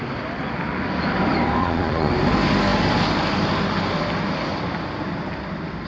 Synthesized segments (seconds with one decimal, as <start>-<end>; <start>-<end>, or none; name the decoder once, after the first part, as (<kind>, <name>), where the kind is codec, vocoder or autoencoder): 1.6-2.1 (vocoder, Vocos)